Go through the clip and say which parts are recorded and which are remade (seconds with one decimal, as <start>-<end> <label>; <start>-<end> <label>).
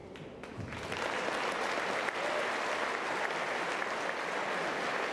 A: 0.0-5.1 recorded